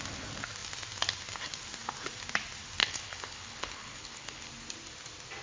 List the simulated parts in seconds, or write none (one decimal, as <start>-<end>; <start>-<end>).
2.8-4.5